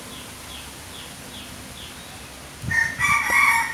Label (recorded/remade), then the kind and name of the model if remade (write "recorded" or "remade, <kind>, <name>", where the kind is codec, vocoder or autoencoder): recorded